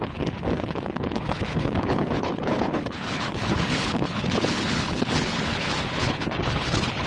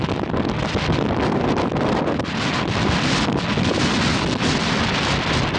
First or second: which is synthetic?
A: first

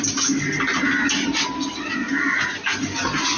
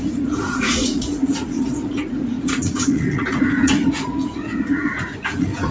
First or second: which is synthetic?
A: second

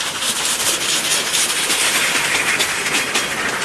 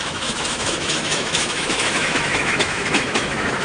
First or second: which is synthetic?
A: second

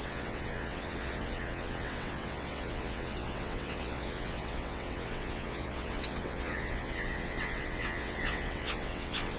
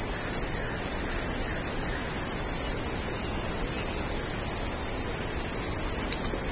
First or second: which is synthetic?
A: first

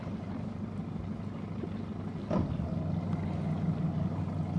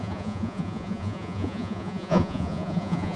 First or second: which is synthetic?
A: second